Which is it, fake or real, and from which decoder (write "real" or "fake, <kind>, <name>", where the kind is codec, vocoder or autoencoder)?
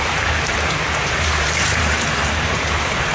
fake, vocoder, BigVGAN v2